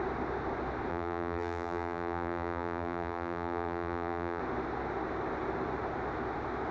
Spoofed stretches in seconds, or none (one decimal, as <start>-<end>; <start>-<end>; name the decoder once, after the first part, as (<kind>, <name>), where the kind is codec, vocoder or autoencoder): 0.9-4.4 (vocoder, BigVGAN v2)